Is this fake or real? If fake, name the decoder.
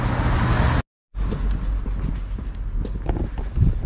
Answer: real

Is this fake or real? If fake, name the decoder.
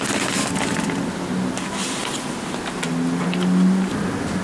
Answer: real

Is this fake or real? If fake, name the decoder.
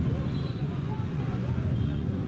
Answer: fake, vocoder, Vocos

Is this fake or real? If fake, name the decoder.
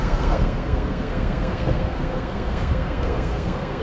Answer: fake, codec, SNAC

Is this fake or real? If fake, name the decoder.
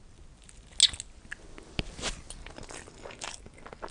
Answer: real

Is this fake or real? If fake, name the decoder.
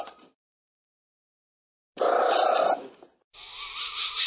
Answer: real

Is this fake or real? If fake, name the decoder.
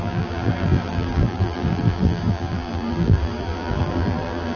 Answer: fake, vocoder, BigVGAN v2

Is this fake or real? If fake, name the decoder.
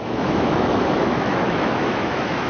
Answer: fake, autoencoder, DAC-VAE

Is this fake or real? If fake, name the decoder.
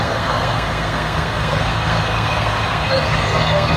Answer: fake, codec, SNAC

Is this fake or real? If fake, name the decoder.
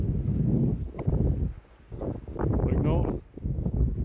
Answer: real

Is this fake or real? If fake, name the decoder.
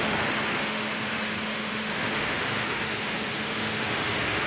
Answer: fake, autoencoder, DAC-VAE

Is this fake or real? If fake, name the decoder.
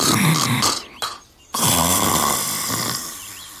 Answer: real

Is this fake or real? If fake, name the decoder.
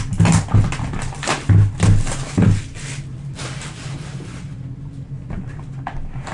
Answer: real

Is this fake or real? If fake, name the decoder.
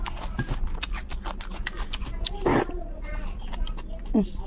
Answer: real